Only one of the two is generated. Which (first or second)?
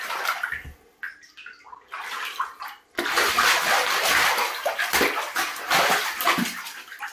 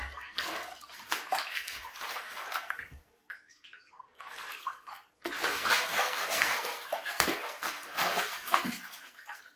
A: second